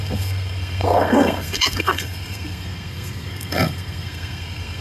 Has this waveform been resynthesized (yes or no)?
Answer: yes